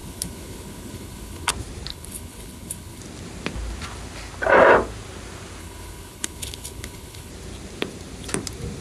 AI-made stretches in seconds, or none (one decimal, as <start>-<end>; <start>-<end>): 0.0-1.5; 1.9-3.0; 5.6-7.3